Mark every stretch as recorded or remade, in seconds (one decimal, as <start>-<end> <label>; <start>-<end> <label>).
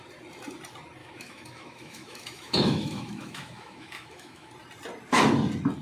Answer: 0.0-1.0 recorded; 1.0-4.5 remade; 4.5-5.8 recorded